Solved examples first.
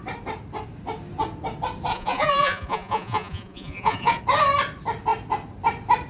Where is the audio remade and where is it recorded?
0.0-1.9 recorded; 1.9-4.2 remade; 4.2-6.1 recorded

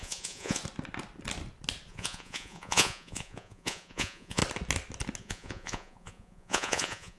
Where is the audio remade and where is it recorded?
0.0-0.6 remade; 0.6-1.9 recorded; 1.9-4.4 remade; 4.4-5.2 recorded; 5.2-7.2 remade

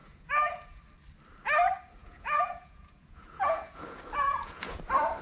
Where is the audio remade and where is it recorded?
0.0-0.8 remade; 0.8-2.0 recorded; 2.0-4.8 remade; 4.8-5.2 recorded

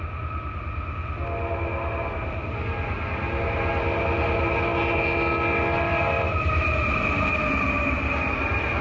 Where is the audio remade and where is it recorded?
0.0-8.8 recorded

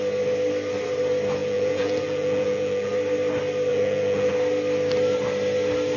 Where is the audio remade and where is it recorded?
0.0-1.4 recorded; 1.4-2.9 remade; 2.9-3.7 recorded; 3.7-4.3 remade; 4.3-6.0 recorded

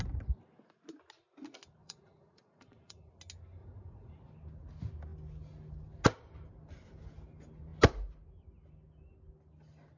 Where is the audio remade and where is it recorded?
0.0-1.8 recorded; 1.8-3.1 remade; 3.1-3.6 recorded; 3.6-4.1 remade; 4.1-10.0 recorded

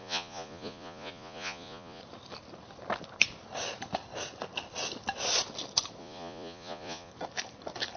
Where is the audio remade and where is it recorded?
0.0-2.0 remade; 2.0-6.0 recorded; 6.0-7.1 remade; 7.1-8.0 recorded